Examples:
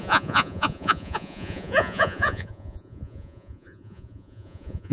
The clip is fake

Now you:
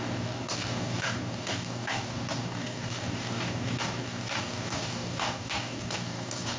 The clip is fake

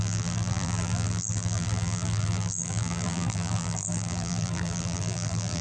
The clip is fake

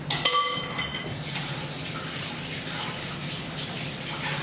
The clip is real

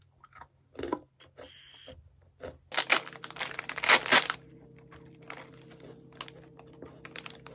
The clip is real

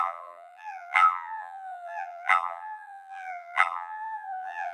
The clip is fake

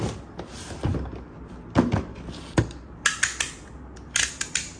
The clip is real